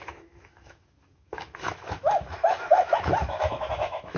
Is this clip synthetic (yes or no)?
yes